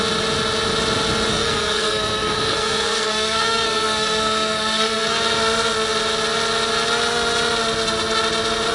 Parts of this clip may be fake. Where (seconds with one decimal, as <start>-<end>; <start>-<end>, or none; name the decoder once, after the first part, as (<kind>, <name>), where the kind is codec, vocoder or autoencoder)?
1.3-5.2 (codec, SNAC)